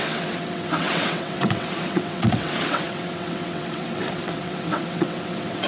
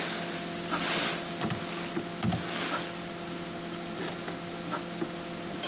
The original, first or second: second